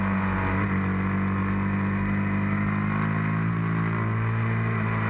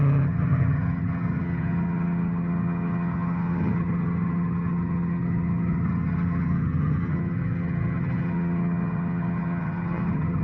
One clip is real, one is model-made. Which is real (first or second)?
first